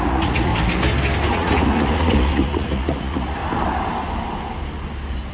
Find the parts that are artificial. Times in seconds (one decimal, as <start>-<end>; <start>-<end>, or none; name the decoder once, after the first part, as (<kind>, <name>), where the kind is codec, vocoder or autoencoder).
0.0-0.5 (vocoder, Vocos); 1.3-3.4